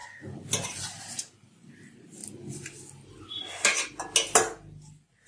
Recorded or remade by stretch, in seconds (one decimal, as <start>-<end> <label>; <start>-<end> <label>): 0.0-5.3 recorded